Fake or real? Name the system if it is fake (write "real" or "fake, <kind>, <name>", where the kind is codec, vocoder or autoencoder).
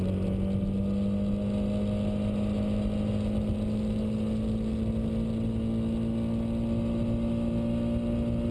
real